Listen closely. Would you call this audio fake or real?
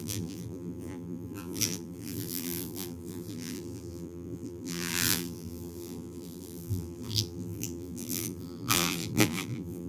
fake